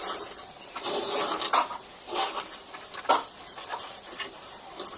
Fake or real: fake